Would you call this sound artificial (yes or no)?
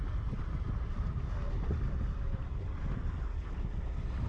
no